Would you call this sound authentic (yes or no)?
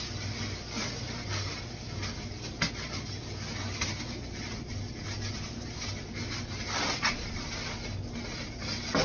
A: yes